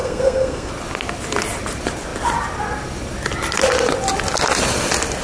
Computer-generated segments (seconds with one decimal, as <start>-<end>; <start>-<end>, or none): 0.0-0.7